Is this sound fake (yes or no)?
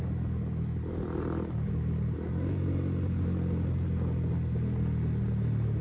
no